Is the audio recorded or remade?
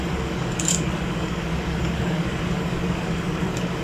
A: remade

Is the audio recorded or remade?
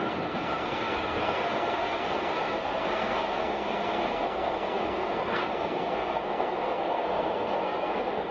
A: remade